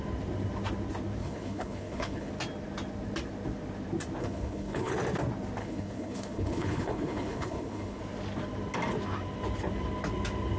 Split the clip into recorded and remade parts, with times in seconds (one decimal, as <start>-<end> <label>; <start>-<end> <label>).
0.0-1.2 recorded; 1.2-2.3 remade; 2.3-4.2 recorded; 4.2-4.9 remade; 4.9-5.6 recorded; 5.6-8.0 remade; 8.0-10.6 recorded